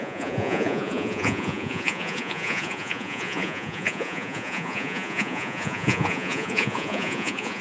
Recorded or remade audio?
remade